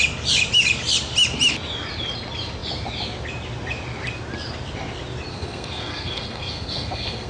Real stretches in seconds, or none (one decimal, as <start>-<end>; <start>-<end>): 0.0-5.3